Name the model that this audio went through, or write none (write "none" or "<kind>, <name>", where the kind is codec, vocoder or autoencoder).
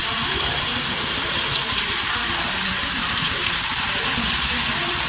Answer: vocoder, BigVGAN v2